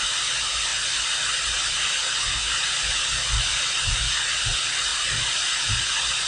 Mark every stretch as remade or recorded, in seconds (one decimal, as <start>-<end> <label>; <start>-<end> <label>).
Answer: 0.0-6.3 recorded